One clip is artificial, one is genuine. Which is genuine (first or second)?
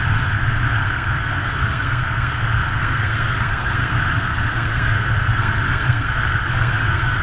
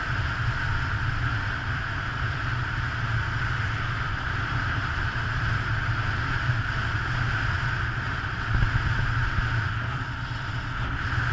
second